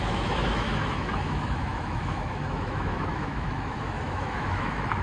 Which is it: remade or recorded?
remade